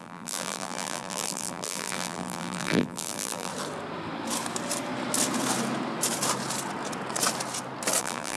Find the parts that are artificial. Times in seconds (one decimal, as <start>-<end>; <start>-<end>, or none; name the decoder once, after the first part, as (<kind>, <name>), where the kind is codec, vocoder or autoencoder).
0.0-3.5 (vocoder, BigVGAN v2); 8.0-8.4